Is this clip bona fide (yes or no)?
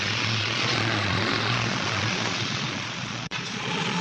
no